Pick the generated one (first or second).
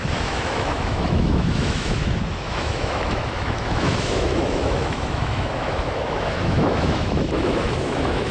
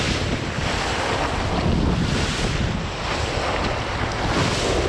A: first